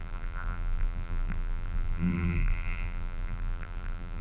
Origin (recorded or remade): remade